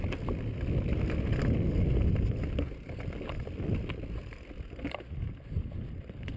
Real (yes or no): yes